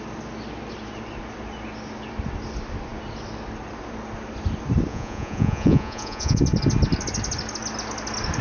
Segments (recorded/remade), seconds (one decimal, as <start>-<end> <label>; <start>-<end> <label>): 0.0-4.9 recorded; 4.9-6.4 remade; 6.4-8.4 recorded